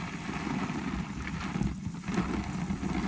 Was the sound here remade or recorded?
recorded